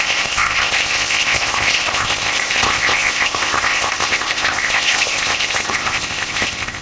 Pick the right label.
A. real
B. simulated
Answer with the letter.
B